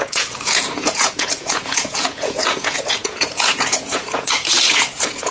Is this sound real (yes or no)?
no